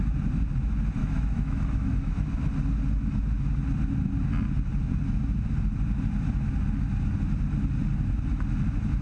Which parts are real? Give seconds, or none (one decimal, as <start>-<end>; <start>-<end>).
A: 0.0-1.0; 2.3-9.0